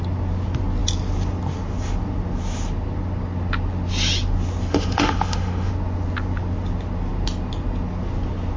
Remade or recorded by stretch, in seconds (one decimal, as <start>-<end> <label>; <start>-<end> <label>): 0.0-4.7 recorded; 4.7-5.7 remade; 5.7-8.6 recorded